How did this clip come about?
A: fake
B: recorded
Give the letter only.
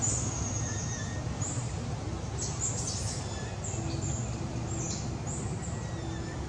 B